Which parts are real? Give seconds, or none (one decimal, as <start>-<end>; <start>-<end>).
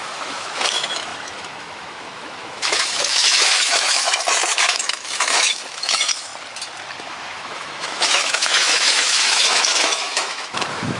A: 6.3-7.0